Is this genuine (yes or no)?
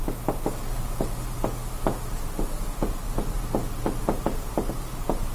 yes